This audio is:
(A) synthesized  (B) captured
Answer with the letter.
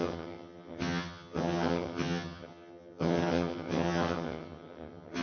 A